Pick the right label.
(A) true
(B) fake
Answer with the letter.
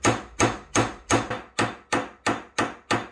A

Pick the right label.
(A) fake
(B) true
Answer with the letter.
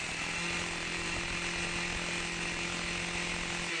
B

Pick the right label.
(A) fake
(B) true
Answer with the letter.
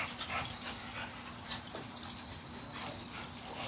B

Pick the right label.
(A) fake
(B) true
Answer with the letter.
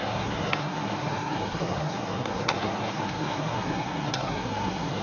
A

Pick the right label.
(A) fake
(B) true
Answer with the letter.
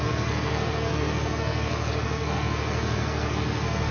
A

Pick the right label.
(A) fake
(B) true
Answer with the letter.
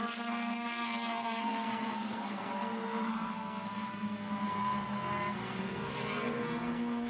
A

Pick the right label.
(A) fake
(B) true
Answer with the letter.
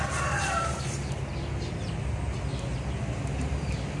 B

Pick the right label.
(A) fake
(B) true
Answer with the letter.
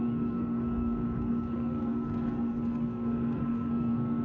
A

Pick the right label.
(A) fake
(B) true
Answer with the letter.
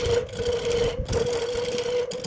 B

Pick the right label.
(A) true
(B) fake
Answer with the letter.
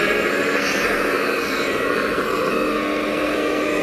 B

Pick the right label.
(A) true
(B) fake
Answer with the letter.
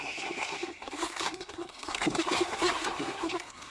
B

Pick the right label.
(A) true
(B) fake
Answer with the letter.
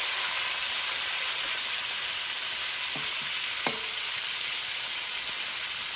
A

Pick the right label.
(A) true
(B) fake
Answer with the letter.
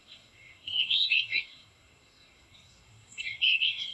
B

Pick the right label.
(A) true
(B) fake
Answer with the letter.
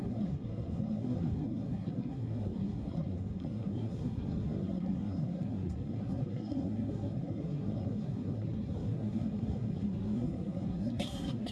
B